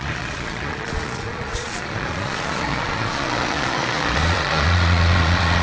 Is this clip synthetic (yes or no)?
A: yes